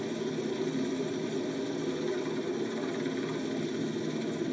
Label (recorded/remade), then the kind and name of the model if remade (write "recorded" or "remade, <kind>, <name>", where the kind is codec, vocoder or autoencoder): recorded